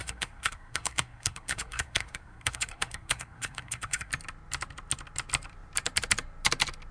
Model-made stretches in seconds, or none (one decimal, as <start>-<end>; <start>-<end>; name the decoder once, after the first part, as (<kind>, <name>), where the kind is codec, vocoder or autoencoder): 0.0-4.1 (codec, SNAC)